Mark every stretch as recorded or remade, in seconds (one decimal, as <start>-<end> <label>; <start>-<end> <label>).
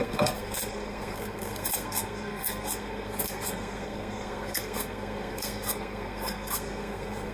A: 0.0-7.3 remade